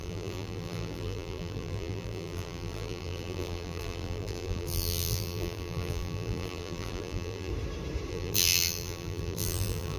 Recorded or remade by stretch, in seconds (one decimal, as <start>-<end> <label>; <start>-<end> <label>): 0.0-7.5 remade; 7.5-8.1 recorded; 8.1-10.0 remade